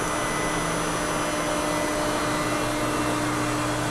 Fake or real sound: real